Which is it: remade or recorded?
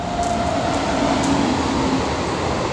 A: recorded